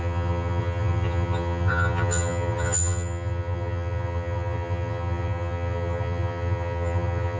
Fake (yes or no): yes